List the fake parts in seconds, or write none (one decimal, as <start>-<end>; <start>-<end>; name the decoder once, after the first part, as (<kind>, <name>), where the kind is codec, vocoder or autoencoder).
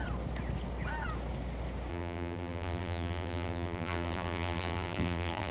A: 1.9-5.5 (vocoder, BigVGAN v2)